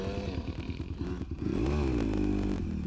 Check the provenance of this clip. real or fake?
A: real